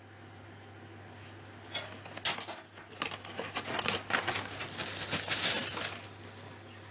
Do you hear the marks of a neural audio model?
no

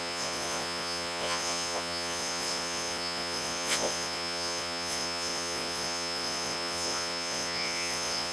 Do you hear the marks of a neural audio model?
yes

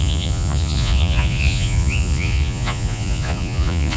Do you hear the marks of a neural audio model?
yes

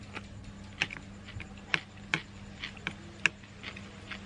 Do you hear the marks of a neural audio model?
no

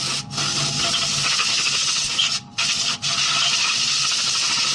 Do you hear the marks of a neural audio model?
no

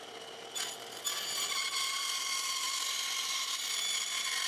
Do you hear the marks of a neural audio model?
no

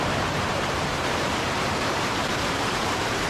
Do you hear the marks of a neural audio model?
yes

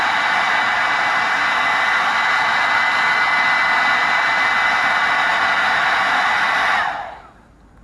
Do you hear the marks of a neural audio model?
no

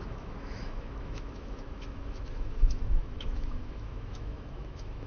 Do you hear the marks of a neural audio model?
yes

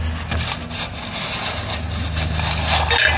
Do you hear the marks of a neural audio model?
no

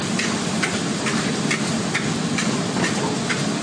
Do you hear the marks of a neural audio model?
no